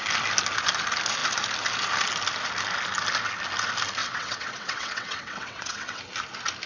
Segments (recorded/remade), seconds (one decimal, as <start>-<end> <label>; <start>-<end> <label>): 0.0-4.0 recorded; 4.0-6.0 remade; 6.0-6.7 recorded